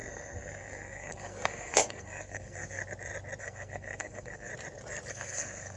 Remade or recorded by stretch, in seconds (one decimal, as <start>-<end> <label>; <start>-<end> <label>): 0.0-2.8 remade; 2.8-3.4 recorded; 3.4-4.5 remade; 4.5-5.1 recorded; 5.1-5.8 remade